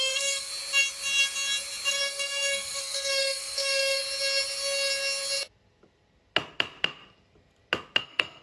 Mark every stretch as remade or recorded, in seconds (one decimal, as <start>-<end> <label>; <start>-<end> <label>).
0.0-0.5 remade; 0.5-2.0 recorded; 2.0-4.0 remade; 4.0-8.0 recorded; 8.0-8.4 remade